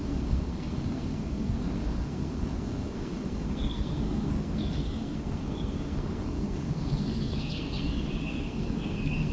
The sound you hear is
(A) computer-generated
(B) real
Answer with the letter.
A